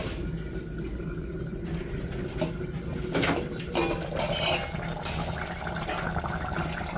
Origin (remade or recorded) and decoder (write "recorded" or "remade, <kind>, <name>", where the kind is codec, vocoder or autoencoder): recorded